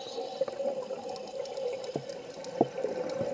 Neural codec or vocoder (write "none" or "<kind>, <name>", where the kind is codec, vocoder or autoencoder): none